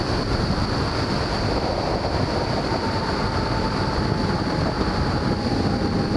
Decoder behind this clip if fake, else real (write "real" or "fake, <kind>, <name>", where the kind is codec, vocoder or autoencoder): fake, vocoder, BigVGAN v2